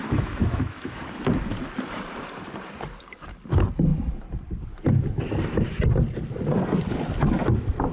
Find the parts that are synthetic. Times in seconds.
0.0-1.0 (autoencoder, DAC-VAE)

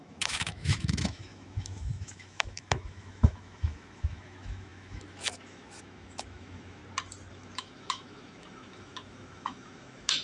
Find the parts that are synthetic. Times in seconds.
0.0-6.8 (autoencoder, DAC-VAE); 7.3-10.2

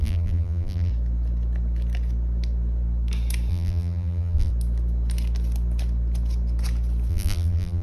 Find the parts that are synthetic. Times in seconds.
0.0-0.9 (vocoder, BigVGAN v2); 3.5-4.5; 7.1-7.8

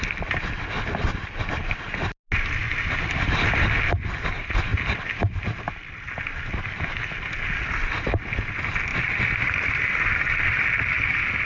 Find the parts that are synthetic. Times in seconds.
none